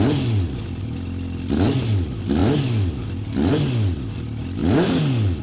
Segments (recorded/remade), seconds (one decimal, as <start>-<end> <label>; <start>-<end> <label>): 0.0-5.4 recorded